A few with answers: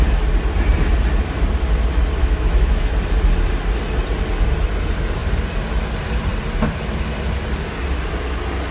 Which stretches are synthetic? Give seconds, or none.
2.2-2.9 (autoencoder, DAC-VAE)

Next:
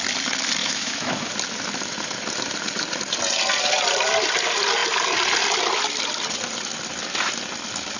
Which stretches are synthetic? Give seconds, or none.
0.6-1.3 (autoencoder, DAC-VAE)

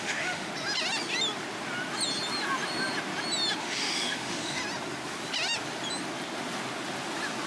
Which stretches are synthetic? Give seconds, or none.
0.0-0.5 (autoencoder, DAC-VAE); 3.6-4.6